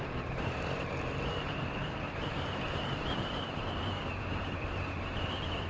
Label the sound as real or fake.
fake